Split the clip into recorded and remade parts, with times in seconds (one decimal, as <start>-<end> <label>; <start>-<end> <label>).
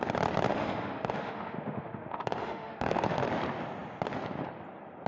0.0-0.5 recorded; 0.5-3.3 remade; 3.3-5.1 recorded